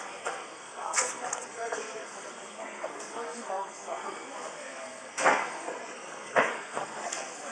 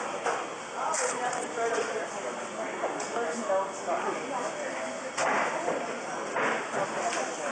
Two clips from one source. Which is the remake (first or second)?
first